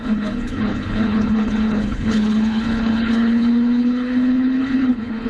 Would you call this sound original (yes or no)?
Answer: no